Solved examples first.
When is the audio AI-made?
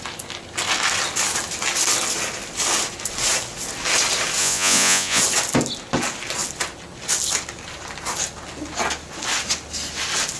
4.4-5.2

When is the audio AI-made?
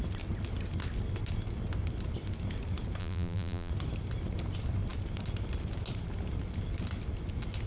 3.0-3.7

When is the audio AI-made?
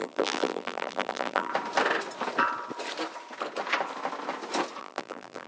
0.0-1.5; 4.8-5.5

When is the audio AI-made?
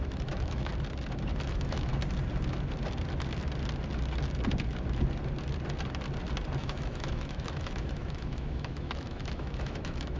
0.0-0.7; 1.5-1.9; 6.6-10.2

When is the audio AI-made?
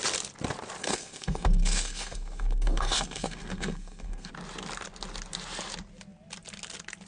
0.8-4.3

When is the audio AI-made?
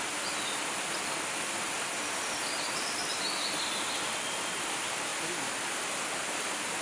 none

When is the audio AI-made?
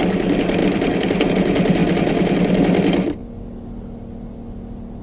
none